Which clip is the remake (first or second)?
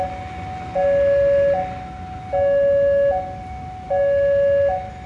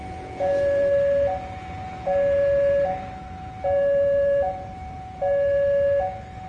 second